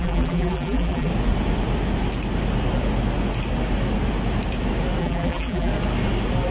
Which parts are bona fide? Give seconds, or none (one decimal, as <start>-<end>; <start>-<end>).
1.1-5.0; 5.7-6.5